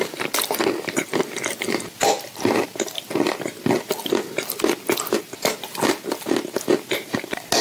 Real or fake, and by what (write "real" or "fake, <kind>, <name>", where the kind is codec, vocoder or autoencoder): real